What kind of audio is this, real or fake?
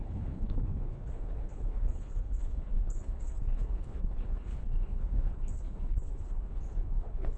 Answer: fake